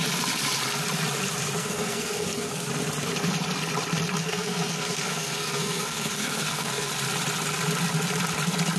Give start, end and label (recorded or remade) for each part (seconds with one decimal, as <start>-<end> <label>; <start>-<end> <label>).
0.0-1.6 recorded; 1.6-2.7 remade; 2.7-4.2 recorded; 4.2-6.9 remade; 6.9-8.8 recorded